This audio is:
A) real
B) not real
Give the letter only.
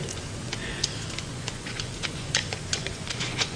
B